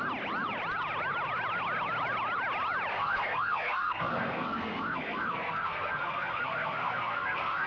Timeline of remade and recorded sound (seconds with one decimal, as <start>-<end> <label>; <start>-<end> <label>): 0.0-2.9 recorded; 2.9-7.7 remade